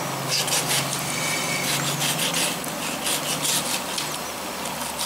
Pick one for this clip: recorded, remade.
recorded